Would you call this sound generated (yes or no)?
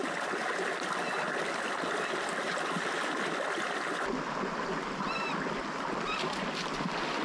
no